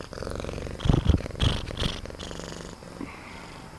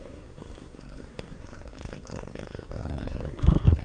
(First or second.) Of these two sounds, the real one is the first